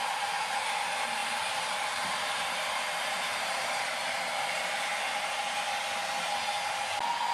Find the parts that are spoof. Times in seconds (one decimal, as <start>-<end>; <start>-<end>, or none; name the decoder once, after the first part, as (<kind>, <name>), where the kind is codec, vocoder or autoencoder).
1.2-4.1 (vocoder, BigVGAN v2)